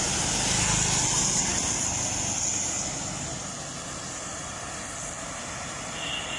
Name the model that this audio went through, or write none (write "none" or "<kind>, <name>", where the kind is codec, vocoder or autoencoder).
none